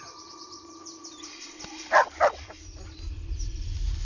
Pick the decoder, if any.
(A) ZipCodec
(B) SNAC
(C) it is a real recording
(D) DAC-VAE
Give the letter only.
C